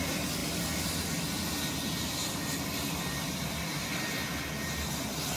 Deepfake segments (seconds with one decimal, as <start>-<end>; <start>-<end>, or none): none